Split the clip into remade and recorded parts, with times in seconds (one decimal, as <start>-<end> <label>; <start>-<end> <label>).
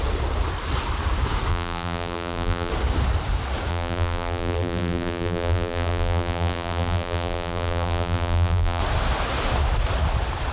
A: 0.0-1.5 recorded; 1.5-2.7 remade; 2.7-3.7 recorded; 3.7-8.8 remade; 8.8-10.5 recorded